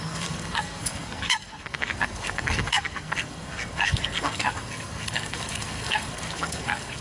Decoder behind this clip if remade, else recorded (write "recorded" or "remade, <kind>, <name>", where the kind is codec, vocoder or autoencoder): remade, codec, SNAC